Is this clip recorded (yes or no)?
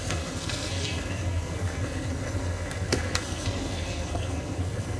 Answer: no